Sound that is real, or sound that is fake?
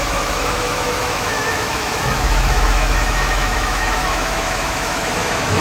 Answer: fake